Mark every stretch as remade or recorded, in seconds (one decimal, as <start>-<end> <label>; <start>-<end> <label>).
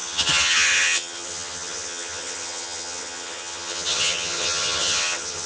0.0-5.5 remade